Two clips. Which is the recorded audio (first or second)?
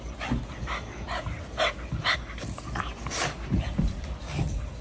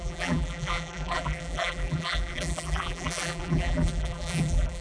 first